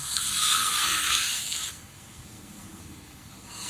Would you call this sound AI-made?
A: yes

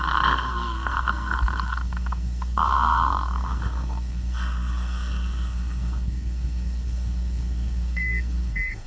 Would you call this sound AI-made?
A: yes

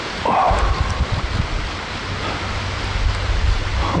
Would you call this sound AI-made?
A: no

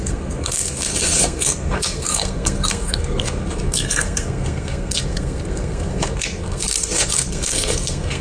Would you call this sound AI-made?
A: yes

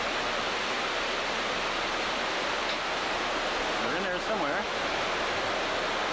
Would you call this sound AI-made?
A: no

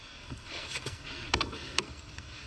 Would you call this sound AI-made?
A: yes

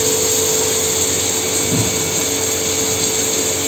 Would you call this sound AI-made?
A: no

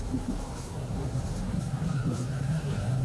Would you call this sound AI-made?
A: yes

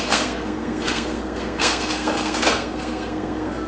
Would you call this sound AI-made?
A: yes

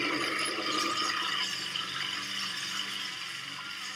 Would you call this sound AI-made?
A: no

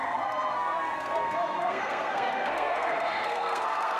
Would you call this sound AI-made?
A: yes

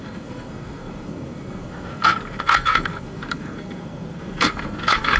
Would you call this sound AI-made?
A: yes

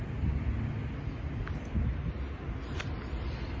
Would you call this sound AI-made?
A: no